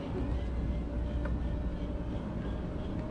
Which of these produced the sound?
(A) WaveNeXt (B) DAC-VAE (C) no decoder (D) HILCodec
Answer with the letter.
C